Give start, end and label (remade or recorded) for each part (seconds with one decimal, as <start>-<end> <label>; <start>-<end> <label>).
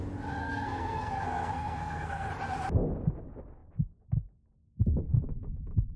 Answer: 0.0-0.4 recorded; 0.4-2.3 remade; 2.3-6.0 recorded